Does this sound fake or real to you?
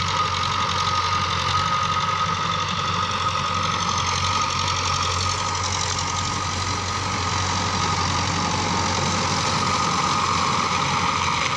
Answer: real